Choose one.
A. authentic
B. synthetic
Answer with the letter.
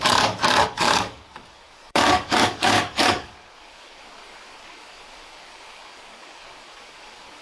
B